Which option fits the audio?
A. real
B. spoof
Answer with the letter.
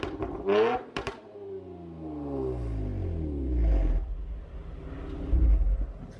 A